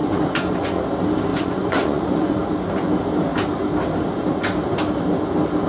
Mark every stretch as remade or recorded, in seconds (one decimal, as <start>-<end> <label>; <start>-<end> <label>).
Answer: 0.0-0.8 remade; 0.8-1.3 recorded; 1.3-2.4 remade; 2.4-5.7 recorded